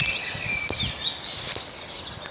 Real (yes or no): yes